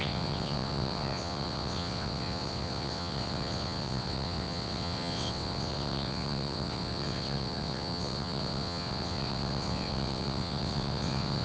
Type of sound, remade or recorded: remade